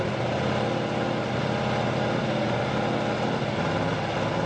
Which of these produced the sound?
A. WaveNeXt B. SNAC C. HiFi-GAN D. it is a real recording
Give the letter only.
D